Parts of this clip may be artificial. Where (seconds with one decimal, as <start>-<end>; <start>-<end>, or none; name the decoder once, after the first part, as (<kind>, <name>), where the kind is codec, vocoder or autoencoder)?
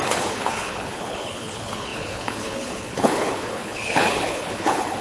0.0-5.0 (codec, HILCodec)